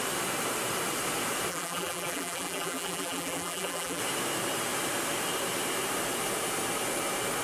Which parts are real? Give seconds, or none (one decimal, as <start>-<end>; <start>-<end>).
0.0-1.5; 4.0-7.4